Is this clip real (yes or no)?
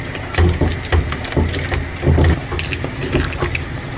yes